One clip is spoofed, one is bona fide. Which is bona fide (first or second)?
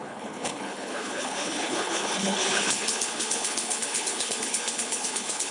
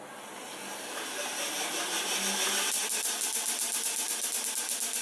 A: second